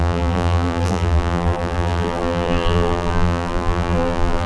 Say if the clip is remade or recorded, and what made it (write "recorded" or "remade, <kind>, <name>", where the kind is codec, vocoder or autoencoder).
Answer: remade, vocoder, BigVGAN v2